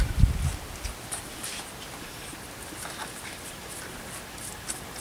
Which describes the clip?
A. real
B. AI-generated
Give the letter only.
A